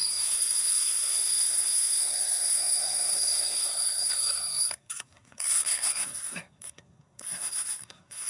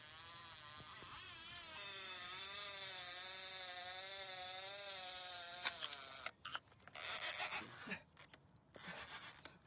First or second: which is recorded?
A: second